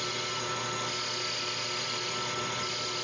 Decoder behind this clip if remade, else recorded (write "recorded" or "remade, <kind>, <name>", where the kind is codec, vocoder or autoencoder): recorded